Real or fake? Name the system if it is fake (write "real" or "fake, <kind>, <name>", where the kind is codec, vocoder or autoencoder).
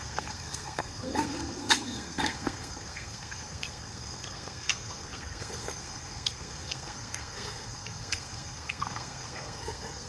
fake, codec, SNAC